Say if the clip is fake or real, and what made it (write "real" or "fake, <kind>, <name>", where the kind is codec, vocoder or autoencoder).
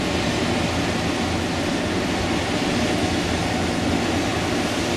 real